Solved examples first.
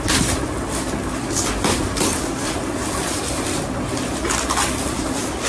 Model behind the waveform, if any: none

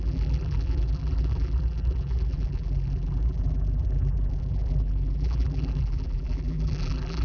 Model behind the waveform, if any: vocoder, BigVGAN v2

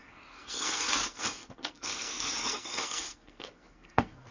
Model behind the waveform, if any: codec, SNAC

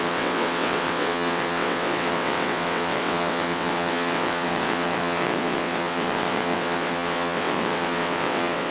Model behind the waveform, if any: vocoder, WaveNeXt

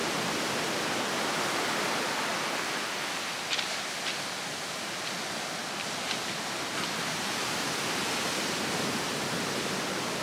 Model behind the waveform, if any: none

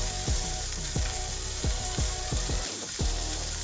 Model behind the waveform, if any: vocoder, BigVGAN v2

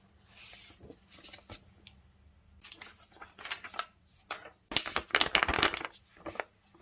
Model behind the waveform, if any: none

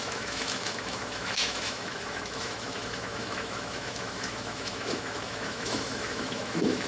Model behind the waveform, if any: autoencoder, DAC-VAE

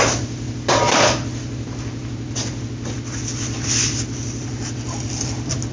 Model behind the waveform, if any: none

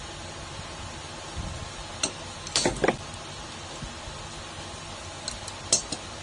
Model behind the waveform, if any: none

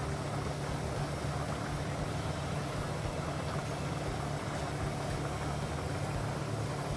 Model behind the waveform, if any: none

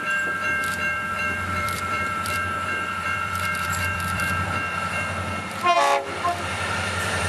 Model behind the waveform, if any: vocoder, BigVGAN v2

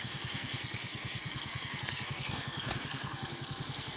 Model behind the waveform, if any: codec, SNAC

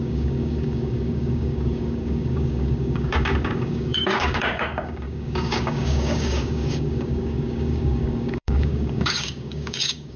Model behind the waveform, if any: codec, DAC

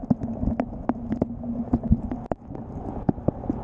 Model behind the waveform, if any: none